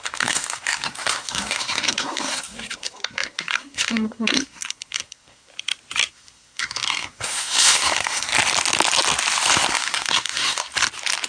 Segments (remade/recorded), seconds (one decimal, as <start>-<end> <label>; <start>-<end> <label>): 0.0-5.5 remade; 5.5-6.1 recorded; 6.1-8.3 remade; 8.3-9.7 recorded; 9.7-10.7 remade; 10.7-11.3 recorded